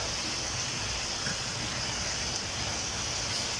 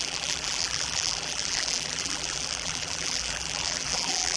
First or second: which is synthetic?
second